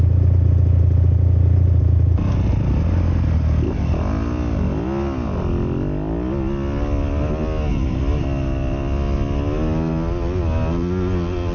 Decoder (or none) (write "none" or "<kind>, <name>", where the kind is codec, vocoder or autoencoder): none